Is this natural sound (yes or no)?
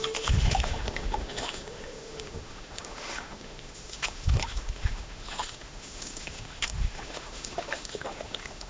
no